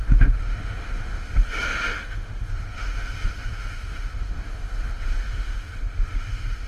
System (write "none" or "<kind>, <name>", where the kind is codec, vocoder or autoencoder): autoencoder, DAC-VAE